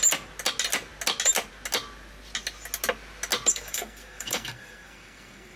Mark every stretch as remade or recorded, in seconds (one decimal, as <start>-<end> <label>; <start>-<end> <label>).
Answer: 0.0-3.5 recorded; 3.5-5.6 remade